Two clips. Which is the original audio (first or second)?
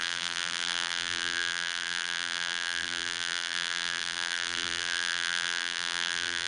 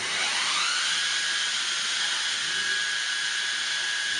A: second